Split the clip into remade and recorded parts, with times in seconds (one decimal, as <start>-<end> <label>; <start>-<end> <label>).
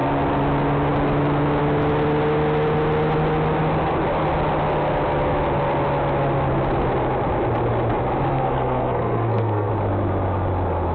0.0-8.3 recorded; 8.3-9.7 remade; 9.7-10.9 recorded